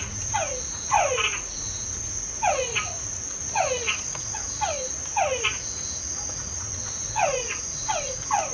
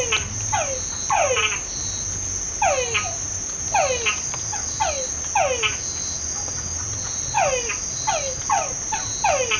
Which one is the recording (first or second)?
second